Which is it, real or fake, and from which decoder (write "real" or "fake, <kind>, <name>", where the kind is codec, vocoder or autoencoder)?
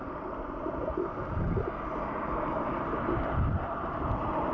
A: real